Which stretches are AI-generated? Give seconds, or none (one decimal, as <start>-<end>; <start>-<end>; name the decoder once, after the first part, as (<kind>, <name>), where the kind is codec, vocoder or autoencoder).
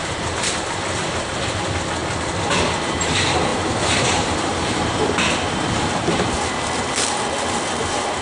0.0-8.2 (vocoder, BigVGAN v2)